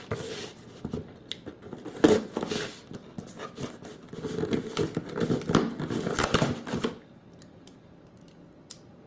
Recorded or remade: recorded